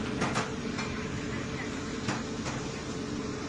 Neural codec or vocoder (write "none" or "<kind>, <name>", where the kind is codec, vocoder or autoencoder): none